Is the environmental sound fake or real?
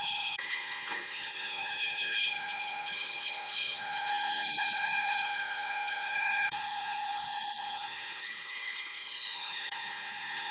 fake